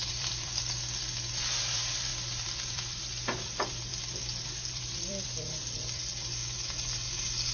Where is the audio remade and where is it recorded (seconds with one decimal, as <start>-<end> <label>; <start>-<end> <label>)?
0.0-3.9 remade; 3.9-4.7 recorded; 4.7-6.4 remade; 6.4-7.5 recorded